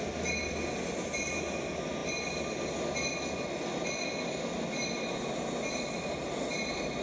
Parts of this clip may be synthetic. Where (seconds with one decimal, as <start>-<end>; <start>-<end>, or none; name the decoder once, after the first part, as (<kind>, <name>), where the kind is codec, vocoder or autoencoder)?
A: none